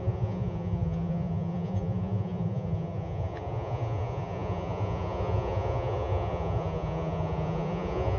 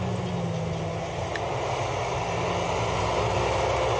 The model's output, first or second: first